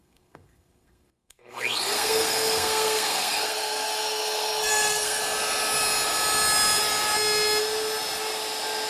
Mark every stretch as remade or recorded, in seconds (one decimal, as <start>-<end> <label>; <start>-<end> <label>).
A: 0.0-5.2 remade; 5.2-8.9 recorded